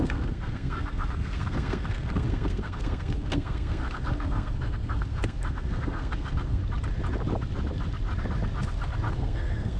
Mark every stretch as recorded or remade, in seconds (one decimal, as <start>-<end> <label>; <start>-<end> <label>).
0.0-6.6 remade; 6.6-9.1 recorded; 9.1-9.8 remade